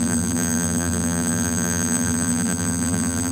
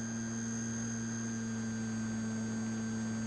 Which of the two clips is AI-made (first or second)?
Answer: first